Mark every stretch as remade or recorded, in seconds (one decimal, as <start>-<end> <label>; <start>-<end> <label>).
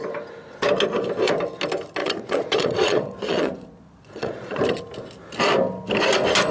0.0-2.0 recorded; 2.0-4.6 remade; 4.6-6.5 recorded